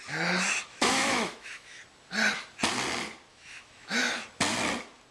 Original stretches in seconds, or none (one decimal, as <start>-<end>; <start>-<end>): 0.0-0.7; 1.8-3.3; 4.1-5.1